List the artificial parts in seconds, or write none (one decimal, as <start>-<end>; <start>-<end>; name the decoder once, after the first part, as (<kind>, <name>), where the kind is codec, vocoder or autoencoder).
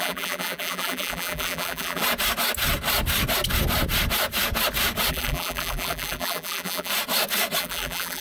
0.0-2.0 (vocoder, BigVGAN v2); 5.1-6.9; 7.6-8.2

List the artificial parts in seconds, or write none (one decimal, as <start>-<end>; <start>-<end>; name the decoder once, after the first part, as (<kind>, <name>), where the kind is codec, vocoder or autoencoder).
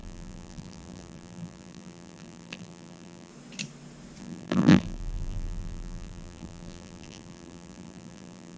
0.0-3.3 (vocoder, BigVGAN v2); 4.2-8.6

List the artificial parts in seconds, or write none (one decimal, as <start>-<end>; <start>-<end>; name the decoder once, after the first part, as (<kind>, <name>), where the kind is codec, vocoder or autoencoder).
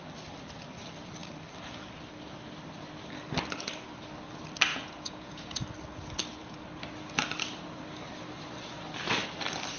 4.7-5.6 (vocoder, Vocos)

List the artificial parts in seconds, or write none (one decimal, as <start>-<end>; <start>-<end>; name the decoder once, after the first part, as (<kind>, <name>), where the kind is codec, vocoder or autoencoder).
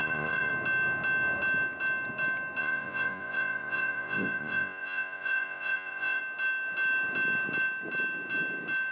0.0-0.5 (vocoder, Vocos); 2.6-6.2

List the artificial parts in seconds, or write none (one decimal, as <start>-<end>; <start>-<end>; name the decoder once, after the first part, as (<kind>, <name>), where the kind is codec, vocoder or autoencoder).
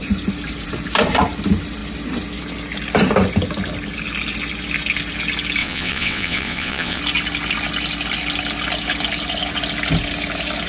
5.6-7.0 (vocoder, WaveNeXt)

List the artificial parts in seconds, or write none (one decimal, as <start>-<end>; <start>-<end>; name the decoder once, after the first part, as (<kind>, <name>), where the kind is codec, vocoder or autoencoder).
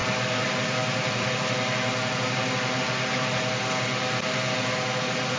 none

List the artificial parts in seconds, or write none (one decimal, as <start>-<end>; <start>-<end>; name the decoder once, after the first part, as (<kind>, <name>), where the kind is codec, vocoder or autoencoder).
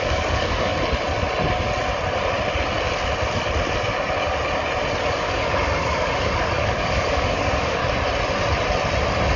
0.0-0.7 (codec, DAC); 5.0-7.8